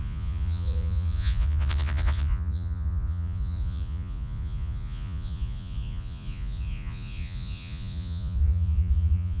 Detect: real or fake fake